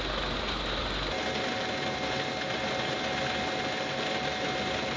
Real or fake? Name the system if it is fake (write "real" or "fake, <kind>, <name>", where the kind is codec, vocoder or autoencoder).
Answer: real